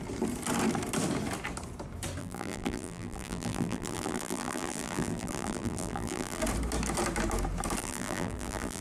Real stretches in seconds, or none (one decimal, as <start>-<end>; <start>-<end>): 0.0-2.2; 6.4-7.8